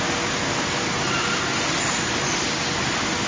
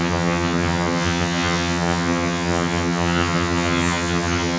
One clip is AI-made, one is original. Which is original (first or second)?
first